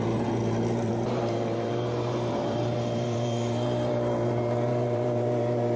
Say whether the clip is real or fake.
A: fake